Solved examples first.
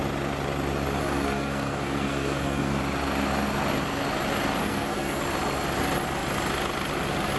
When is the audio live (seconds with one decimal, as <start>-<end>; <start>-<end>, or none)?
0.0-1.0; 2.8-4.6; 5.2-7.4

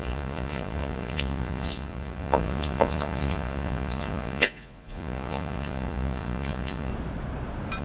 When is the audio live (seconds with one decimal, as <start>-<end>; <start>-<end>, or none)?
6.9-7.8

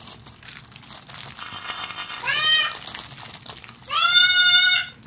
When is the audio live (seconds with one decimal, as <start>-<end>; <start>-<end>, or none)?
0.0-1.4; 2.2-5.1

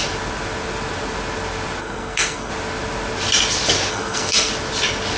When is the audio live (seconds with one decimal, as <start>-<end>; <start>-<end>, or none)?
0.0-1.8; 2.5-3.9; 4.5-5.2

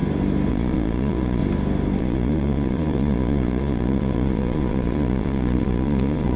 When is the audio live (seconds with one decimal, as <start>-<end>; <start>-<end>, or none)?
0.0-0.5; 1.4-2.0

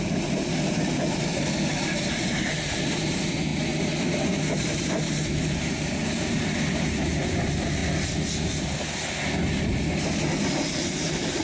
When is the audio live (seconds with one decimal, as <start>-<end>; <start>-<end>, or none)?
3.5-4.6; 7.8-10.5